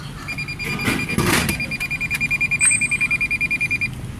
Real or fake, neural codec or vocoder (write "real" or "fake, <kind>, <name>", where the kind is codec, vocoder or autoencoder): real